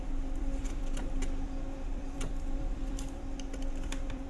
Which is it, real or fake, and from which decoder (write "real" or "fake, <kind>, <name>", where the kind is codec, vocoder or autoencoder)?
fake, vocoder, BigVGAN v2